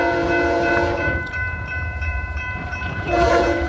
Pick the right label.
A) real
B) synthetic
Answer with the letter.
B